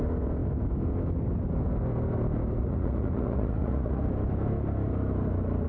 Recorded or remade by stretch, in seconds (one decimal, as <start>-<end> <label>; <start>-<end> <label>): 0.0-2.6 recorded; 2.6-4.0 remade; 4.0-5.7 recorded